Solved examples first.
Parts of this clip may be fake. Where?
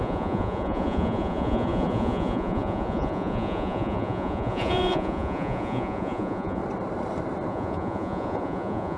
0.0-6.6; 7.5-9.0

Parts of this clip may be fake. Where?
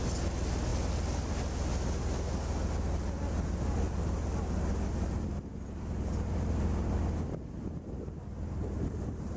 none